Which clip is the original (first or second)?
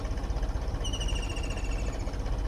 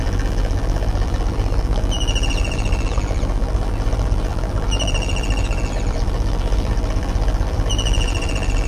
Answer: first